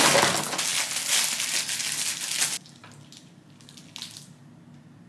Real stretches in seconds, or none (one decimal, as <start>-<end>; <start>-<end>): 0.0-5.1